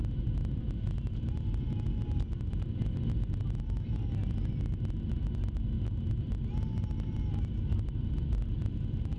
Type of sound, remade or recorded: recorded